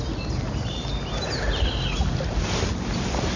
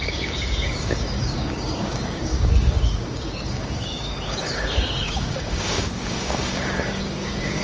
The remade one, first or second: second